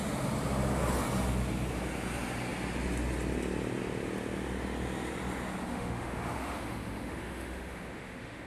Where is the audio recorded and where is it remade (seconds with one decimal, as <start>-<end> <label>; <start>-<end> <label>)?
0.0-5.7 recorded; 5.7-8.5 remade